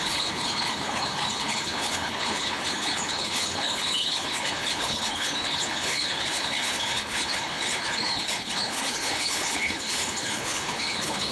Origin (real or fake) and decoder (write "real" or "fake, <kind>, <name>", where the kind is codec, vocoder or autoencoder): fake, codec, HILCodec